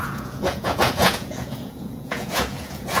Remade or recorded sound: remade